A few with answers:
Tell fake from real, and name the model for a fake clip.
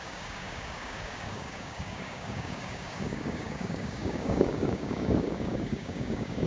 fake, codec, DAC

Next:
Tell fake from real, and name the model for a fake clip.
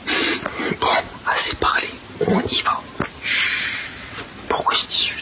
real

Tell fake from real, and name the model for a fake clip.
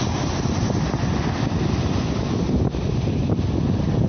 real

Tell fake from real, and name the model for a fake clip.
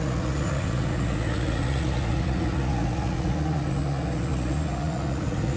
fake, vocoder, Vocos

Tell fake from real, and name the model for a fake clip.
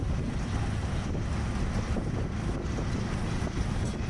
fake, vocoder, BigVGAN v2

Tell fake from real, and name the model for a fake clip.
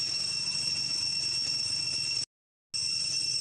real